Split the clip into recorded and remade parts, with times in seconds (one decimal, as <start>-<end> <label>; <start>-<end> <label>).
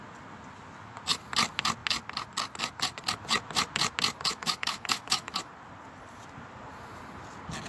0.0-4.3 recorded; 4.3-5.5 remade; 5.5-7.7 recorded